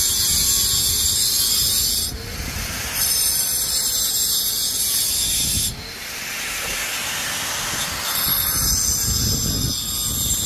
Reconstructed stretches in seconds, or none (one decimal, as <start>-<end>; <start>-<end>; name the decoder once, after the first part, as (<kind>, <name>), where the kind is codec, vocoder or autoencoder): none